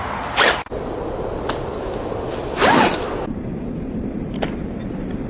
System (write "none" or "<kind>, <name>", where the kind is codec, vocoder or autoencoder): none